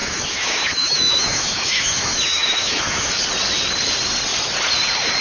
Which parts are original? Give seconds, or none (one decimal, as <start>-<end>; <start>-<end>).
3.1-5.2